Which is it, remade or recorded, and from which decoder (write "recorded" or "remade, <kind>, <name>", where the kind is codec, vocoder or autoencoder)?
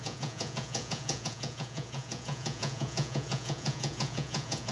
remade, vocoder, Vocos